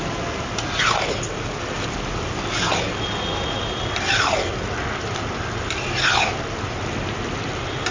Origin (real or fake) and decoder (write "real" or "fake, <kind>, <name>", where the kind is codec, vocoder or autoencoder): real